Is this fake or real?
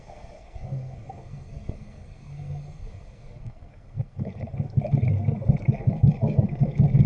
fake